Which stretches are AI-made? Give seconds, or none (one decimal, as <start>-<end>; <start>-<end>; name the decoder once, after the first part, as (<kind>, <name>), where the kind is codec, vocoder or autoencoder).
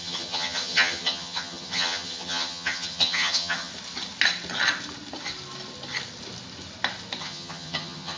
0.0-3.7 (vocoder, HiFi-GAN); 7.2-8.2